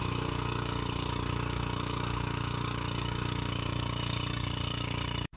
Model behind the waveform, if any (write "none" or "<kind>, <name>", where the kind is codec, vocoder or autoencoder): codec, DAC